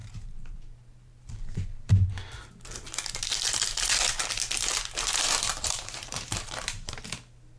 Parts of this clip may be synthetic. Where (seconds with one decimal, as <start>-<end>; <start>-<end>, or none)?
0.0-2.1; 5.5-6.9